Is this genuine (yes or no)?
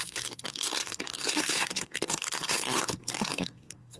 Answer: no